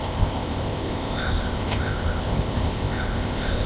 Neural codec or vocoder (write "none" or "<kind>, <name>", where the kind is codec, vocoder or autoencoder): codec, ZipCodec